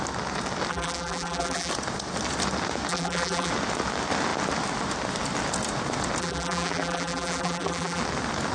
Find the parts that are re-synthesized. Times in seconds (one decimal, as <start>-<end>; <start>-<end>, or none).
0.7-1.7; 2.9-3.5; 6.2-8.0